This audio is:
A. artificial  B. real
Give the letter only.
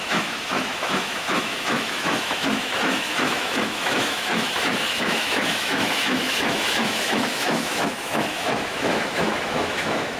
A